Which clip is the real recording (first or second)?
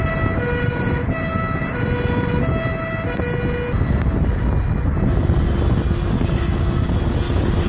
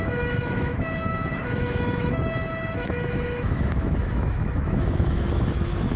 first